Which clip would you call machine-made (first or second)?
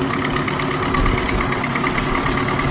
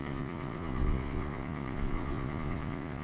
second